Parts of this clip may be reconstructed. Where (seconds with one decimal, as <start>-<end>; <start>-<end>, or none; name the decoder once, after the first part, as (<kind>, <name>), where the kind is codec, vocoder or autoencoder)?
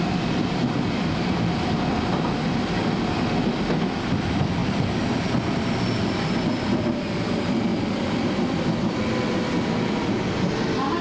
7.7-9.1 (vocoder, BigVGAN v2)